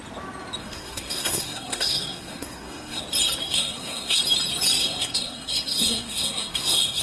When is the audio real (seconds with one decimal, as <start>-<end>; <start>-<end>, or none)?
0.0-0.6; 3.0-3.4; 4.2-4.8